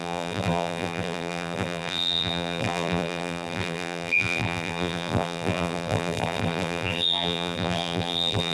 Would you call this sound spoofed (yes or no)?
yes